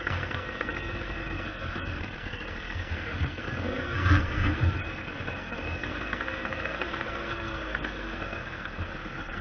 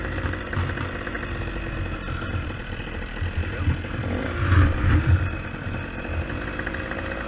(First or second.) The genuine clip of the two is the second